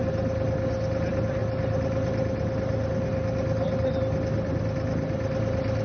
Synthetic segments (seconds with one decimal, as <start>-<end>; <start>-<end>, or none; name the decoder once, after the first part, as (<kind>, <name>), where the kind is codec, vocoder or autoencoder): none